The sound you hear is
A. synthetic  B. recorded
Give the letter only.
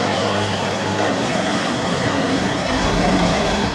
A